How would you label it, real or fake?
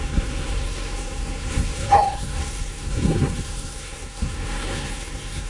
fake